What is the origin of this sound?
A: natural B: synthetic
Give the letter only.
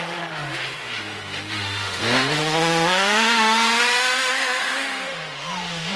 B